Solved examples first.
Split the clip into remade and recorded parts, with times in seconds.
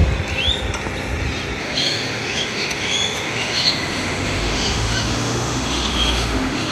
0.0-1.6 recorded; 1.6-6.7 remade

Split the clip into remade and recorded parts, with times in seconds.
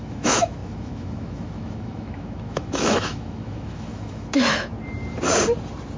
0.0-4.7 remade; 4.7-6.0 recorded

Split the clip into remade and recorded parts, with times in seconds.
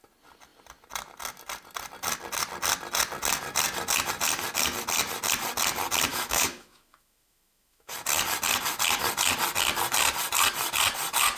0.0-6.1 recorded; 6.1-7.9 remade; 7.9-11.4 recorded